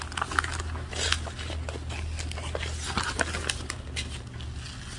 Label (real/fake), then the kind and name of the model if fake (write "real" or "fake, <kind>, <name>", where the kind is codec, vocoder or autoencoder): real